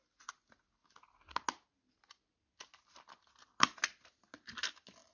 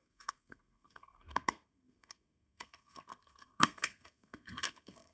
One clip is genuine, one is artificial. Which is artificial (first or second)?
second